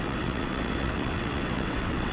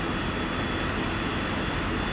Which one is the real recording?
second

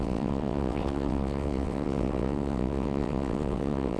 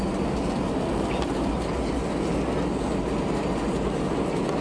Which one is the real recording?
second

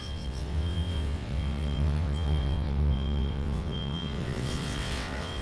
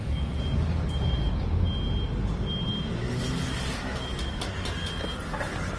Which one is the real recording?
second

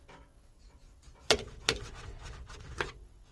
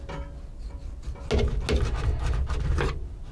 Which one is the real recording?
second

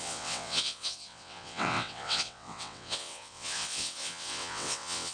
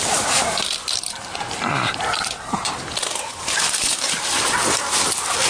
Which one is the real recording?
second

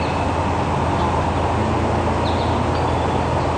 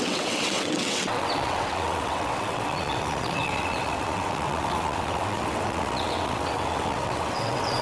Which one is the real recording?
first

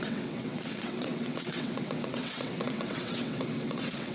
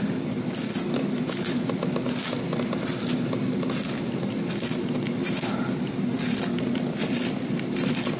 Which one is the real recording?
second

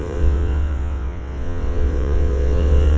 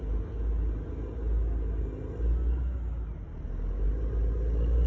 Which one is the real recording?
second